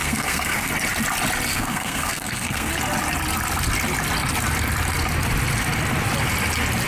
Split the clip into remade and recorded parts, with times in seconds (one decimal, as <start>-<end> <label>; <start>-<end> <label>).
0.0-0.7 remade; 0.7-1.5 recorded; 1.5-2.7 remade; 2.7-6.9 recorded

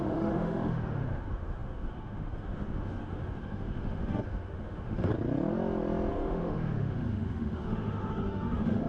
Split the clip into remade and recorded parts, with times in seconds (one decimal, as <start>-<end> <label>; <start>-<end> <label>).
0.0-5.1 remade; 5.1-6.1 recorded; 6.1-8.9 remade

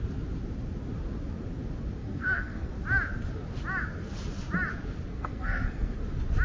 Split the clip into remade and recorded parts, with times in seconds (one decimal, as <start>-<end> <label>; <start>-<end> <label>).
0.0-2.0 recorded; 2.0-2.7 remade; 2.7-5.1 recorded; 5.1-6.0 remade; 6.0-6.4 recorded

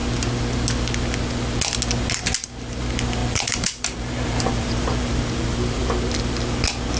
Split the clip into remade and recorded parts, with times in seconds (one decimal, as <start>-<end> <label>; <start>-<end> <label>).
0.0-3.2 recorded; 3.2-5.9 remade; 5.9-7.0 recorded

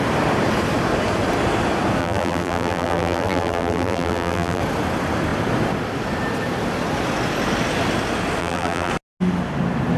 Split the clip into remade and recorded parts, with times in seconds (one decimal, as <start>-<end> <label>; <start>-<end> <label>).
0.0-2.0 recorded; 2.0-4.6 remade; 4.6-8.4 recorded; 8.4-8.9 remade; 8.9-10.0 recorded

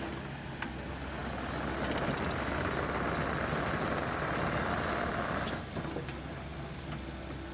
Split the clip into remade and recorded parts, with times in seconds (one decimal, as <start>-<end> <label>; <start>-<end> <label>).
0.0-7.5 recorded

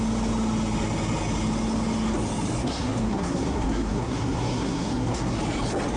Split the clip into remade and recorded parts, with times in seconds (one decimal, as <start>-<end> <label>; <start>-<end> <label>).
0.0-2.6 recorded; 2.6-5.4 remade; 5.4-6.0 recorded

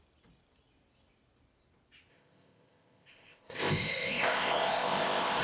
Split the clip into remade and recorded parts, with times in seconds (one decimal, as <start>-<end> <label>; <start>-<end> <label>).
0.0-2.1 recorded; 2.1-5.4 remade